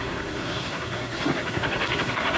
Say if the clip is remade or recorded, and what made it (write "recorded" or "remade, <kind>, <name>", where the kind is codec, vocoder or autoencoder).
remade, codec, SNAC